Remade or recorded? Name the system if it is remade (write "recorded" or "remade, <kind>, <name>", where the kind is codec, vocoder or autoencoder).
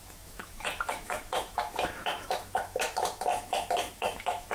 remade, autoencoder, DAC-VAE